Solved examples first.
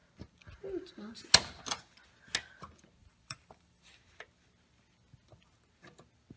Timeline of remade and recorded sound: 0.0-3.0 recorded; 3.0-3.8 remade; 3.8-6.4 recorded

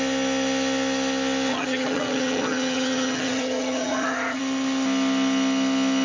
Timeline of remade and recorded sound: 0.0-1.5 recorded; 1.5-4.4 remade; 4.4-6.0 recorded

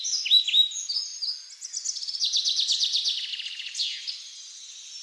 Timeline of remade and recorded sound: 0.0-5.0 recorded

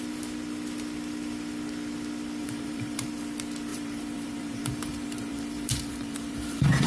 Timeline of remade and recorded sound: 0.0-2.4 recorded; 2.4-3.1 remade; 3.1-3.7 recorded; 3.7-6.9 remade

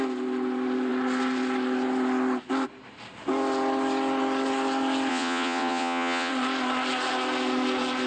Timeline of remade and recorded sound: 0.0-5.1 recorded; 5.1-6.3 remade; 6.3-8.1 recorded